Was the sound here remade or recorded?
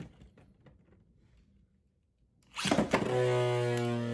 recorded